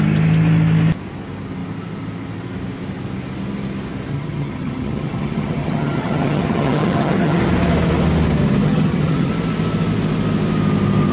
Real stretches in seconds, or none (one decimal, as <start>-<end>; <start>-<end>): 0.0-4.1; 7.4-8.6; 9.3-11.1